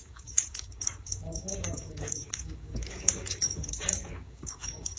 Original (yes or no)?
no